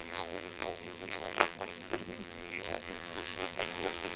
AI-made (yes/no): yes